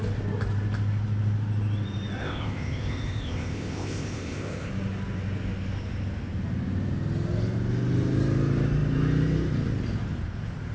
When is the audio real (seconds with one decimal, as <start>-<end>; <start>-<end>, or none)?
0.0-2.2; 4.7-10.7